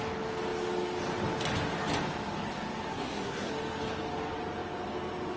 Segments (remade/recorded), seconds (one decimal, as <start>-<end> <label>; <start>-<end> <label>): 0.0-2.9 recorded; 2.9-3.5 remade; 3.5-5.4 recorded